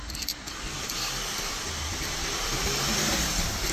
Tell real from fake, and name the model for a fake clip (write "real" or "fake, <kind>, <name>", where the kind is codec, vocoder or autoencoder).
real